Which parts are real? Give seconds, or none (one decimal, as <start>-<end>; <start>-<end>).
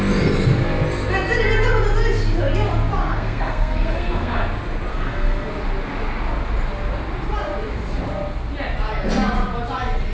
0.0-3.0; 4.4-4.9; 5.5-10.1